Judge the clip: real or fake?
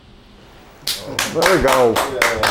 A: real